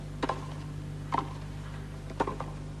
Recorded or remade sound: recorded